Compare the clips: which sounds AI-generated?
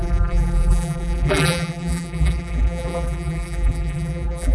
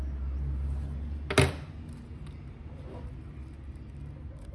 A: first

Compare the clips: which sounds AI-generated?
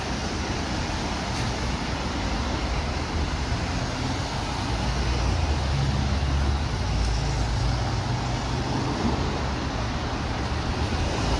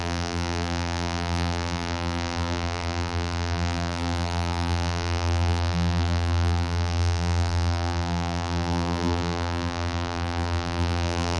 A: second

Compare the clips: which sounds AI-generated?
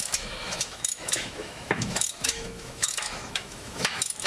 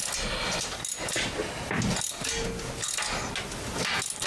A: first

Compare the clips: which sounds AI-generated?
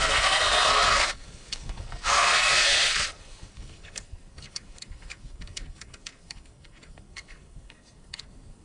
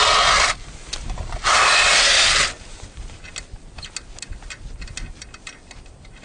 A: first